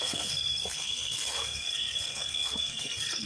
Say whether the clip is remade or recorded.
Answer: remade